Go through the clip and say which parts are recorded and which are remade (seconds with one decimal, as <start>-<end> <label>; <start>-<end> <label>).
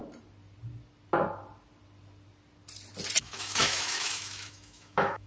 0.0-3.2 recorded; 3.2-5.3 remade